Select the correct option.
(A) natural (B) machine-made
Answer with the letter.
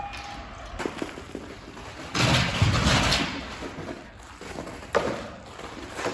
A